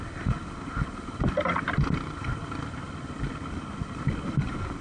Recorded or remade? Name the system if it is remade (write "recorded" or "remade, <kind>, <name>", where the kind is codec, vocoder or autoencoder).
recorded